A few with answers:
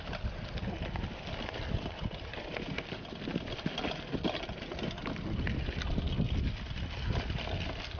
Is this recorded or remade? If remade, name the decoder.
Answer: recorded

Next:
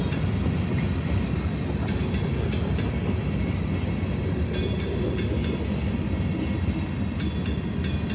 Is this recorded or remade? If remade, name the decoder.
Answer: recorded